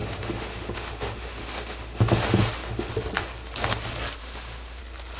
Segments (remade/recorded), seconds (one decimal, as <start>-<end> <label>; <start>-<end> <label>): 0.0-2.9 remade; 2.9-4.2 recorded; 4.2-4.8 remade; 4.8-5.2 recorded